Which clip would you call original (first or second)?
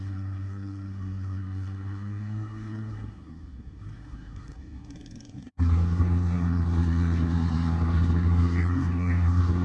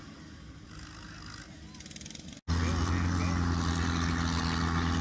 second